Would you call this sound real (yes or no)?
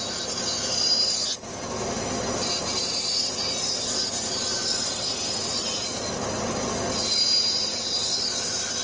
no